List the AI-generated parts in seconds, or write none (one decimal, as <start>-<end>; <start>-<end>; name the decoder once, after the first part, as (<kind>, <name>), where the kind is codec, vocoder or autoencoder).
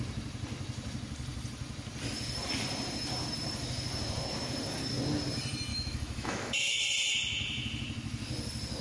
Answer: 5.7-6.8 (autoencoder, DAC-VAE)